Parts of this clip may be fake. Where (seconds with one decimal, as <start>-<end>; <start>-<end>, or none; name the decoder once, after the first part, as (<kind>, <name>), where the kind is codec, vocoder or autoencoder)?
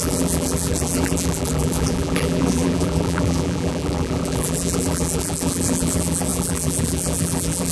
0.0-7.7 (vocoder, BigVGAN v2)